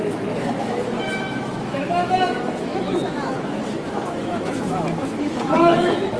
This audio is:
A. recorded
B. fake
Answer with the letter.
B